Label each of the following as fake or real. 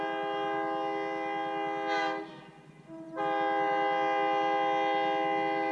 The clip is real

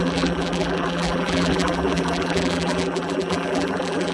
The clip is fake